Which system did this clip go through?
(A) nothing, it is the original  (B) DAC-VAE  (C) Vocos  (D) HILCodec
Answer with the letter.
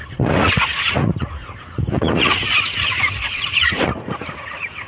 C